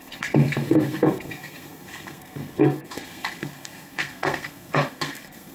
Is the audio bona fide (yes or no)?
no